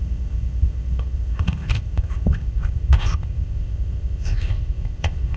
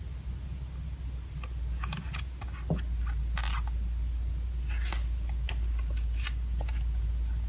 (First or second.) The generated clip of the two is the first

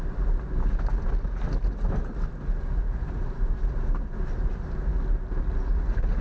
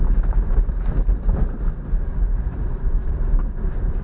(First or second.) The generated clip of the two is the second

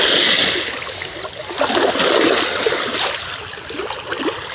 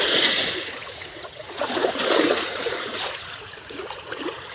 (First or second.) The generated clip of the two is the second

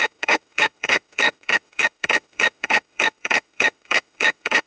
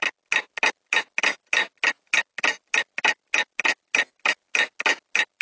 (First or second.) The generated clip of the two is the first